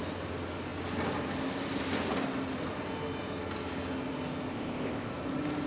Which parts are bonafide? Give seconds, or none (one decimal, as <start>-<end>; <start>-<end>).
0.0-4.5; 5.1-5.7